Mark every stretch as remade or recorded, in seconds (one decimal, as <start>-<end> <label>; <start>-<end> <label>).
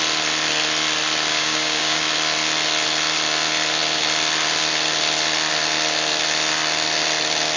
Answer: 0.0-1.3 recorded; 1.3-2.0 remade; 2.0-7.6 recorded